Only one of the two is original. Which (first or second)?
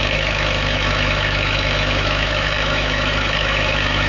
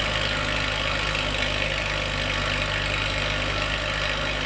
second